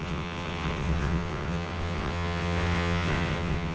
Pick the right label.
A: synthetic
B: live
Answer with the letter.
A